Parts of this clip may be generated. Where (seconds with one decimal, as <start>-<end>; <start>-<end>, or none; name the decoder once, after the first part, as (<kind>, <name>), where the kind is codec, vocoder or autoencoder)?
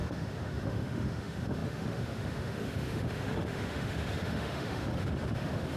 0.0-5.8 (autoencoder, DAC-VAE)